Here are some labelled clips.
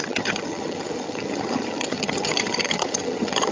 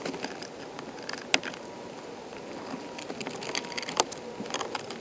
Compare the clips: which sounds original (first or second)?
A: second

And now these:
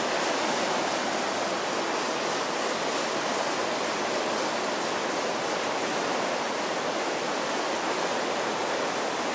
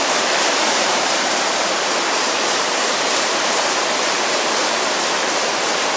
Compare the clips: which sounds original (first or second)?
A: first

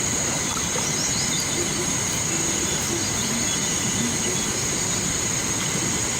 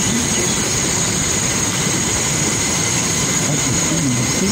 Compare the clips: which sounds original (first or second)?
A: first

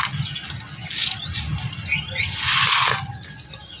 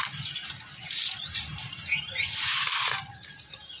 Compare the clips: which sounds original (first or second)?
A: first